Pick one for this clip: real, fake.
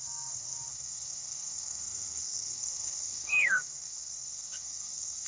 fake